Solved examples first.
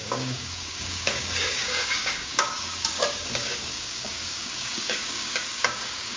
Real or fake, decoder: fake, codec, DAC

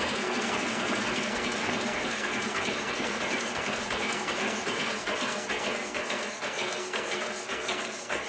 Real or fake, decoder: fake, codec, SNAC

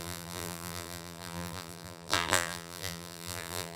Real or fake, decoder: fake, vocoder, BigVGAN v2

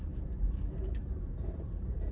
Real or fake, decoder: fake, vocoder, BigVGAN v2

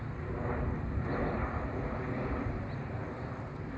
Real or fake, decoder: real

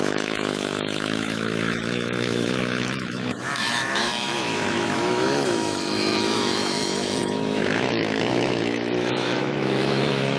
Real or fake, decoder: fake, autoencoder, DAC-VAE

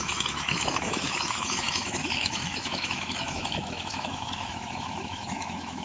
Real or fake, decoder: fake, autoencoder, DAC-VAE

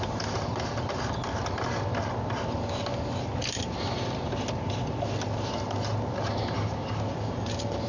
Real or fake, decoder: real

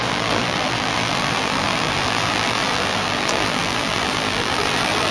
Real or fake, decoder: fake, vocoder, BigVGAN v2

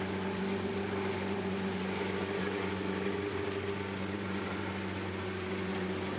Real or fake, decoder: real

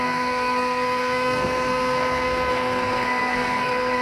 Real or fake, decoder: fake, codec, SNAC